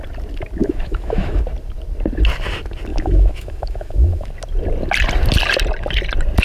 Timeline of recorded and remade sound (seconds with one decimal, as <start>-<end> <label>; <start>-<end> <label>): 0.0-0.6 recorded; 0.6-1.4 remade; 1.4-2.9 recorded; 2.9-4.3 remade; 4.3-6.4 recorded